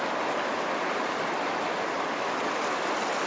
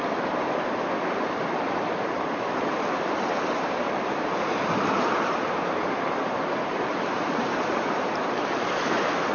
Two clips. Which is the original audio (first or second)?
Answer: first